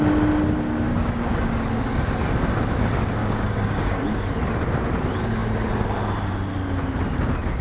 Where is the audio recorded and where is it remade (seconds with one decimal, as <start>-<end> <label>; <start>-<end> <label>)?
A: 0.0-0.9 recorded; 0.9-1.7 remade; 1.7-3.2 recorded; 3.2-4.0 remade; 4.0-7.6 recorded